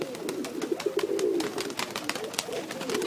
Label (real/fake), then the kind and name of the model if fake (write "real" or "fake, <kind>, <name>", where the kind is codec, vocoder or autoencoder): real